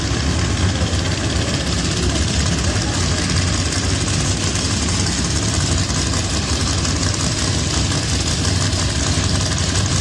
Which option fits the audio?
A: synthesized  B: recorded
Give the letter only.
B